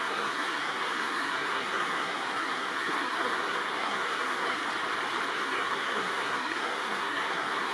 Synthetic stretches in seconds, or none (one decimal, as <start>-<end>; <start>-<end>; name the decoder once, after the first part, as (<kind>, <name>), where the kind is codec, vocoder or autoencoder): 0.0-4.6 (codec, SNAC); 5.3-7.7